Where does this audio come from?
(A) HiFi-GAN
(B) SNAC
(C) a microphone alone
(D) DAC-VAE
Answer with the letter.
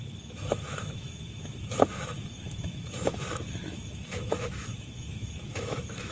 D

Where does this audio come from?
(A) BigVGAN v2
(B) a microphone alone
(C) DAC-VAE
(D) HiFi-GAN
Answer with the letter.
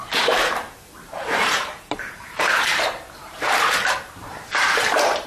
A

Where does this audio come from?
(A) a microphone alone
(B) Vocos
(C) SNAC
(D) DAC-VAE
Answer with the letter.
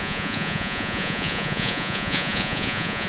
B